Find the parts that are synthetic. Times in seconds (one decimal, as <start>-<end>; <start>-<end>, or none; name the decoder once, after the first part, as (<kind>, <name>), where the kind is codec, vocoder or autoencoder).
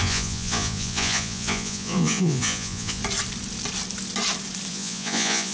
0.0-3.0 (vocoder, Vocos); 4.7-5.5